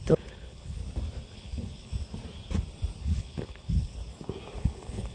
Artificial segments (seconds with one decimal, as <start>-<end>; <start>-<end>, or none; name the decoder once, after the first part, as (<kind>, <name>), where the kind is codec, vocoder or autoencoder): 0.0-0.8 (codec, HILCodec); 1.3-1.9; 3.0-4.0; 4.6-5.1